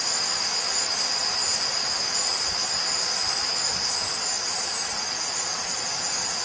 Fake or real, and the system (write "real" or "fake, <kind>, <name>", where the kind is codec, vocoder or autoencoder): fake, vocoder, BigVGAN v2